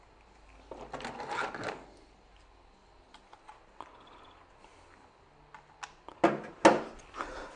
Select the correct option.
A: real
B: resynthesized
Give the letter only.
A